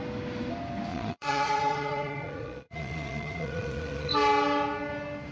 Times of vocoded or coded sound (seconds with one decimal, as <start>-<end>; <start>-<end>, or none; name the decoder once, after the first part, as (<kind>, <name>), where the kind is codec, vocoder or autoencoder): 0.9-4.1 (vocoder, Vocos)